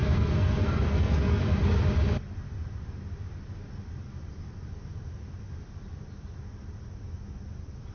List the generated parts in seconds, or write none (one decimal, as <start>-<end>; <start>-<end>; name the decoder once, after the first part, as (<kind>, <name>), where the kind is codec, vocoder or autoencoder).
0.0-1.4 (codec, SNAC)